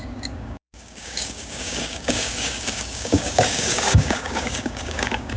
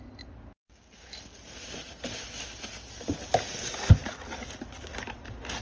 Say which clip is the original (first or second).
second